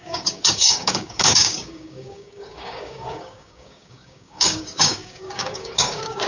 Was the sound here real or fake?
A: fake